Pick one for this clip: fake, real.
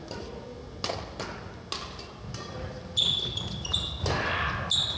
real